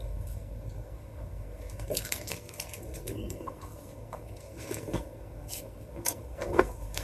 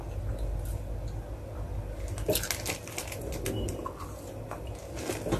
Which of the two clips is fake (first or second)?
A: first